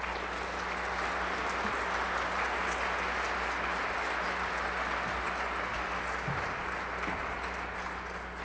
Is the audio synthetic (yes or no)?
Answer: no